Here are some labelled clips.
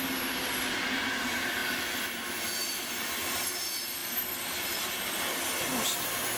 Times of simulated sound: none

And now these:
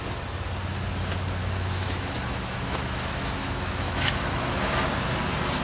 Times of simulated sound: 1.4-4.8 (autoencoder, DAC-VAE)

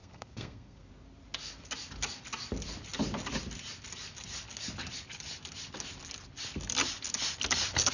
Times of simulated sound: 0.0-0.9 (codec, SNAC)

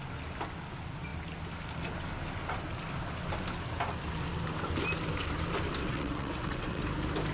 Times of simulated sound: 5.8-6.8 (vocoder, WaveNeXt)

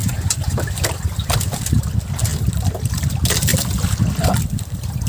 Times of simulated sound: 0.0-1.6 (vocoder, BigVGAN v2); 3.5-5.1

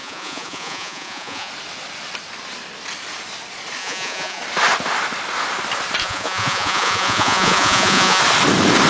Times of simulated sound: 0.0-1.5 (vocoder, Vocos); 3.8-4.4; 6.0-8.2